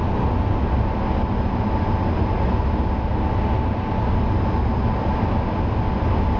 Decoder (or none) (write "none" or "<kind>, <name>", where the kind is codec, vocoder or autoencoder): none